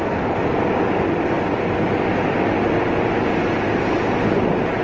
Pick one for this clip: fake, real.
fake